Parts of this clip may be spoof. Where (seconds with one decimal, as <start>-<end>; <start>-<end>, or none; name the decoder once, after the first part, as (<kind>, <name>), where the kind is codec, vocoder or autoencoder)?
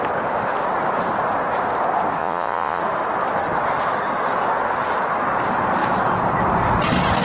2.2-2.8 (vocoder, Vocos)